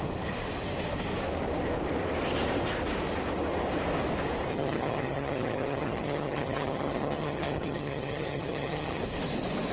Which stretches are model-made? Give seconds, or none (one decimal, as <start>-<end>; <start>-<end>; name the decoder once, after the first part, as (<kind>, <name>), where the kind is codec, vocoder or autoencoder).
4.5-9.0 (vocoder, HiFi-GAN)